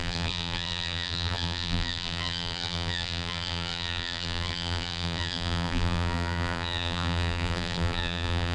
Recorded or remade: remade